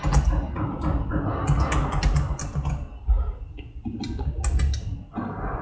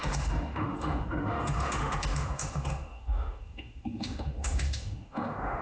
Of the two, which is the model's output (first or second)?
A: second